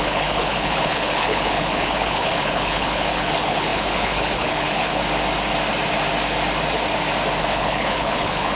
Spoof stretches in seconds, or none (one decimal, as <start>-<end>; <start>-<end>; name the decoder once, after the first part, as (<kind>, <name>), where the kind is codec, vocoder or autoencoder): 0.0-5.0 (codec, HILCodec); 7.4-8.5